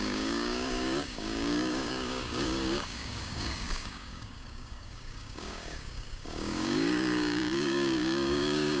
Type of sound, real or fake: fake